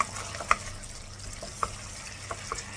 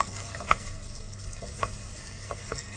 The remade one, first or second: second